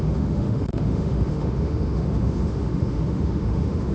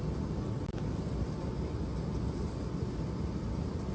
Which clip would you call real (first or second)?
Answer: second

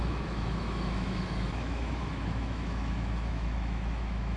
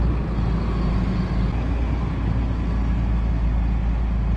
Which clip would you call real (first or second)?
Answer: second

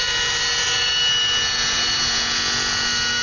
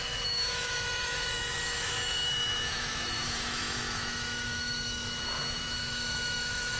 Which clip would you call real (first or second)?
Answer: first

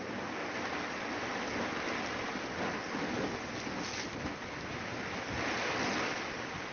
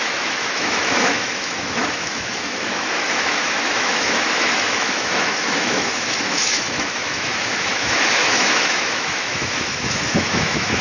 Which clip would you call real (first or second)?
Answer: first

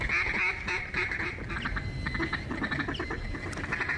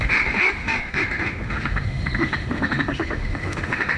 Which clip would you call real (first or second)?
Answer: first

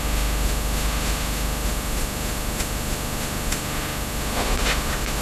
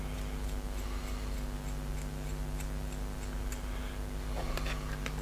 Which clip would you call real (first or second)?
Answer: second